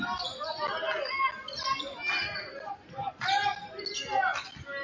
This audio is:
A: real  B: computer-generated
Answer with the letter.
A